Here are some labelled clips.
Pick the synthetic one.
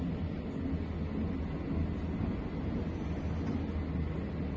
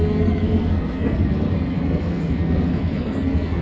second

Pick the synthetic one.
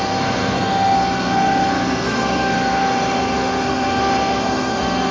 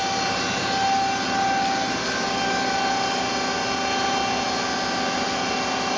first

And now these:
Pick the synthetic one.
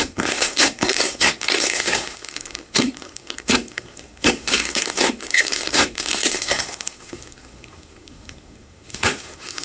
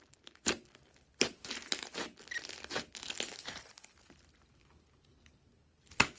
first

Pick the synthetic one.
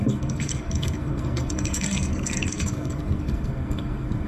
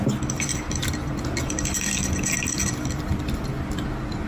first